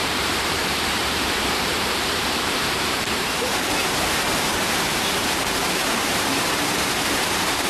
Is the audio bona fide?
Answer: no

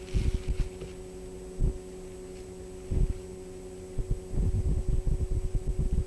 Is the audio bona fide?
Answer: yes